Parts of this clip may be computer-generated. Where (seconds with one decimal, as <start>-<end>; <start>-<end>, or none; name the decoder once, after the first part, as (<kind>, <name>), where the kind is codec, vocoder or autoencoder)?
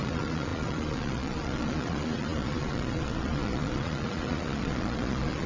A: 0.0-5.5 (vocoder, Vocos)